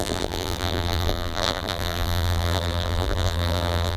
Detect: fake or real fake